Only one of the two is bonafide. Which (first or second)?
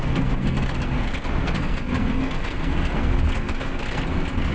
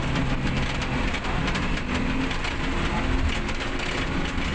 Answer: second